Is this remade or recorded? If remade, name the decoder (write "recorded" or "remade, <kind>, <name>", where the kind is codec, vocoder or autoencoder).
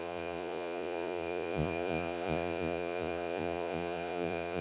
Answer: remade, vocoder, Vocos